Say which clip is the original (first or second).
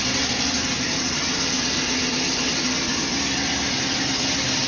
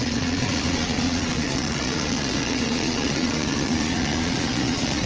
first